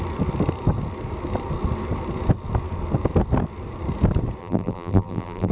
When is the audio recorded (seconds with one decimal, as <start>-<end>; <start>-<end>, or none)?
0.0-4.4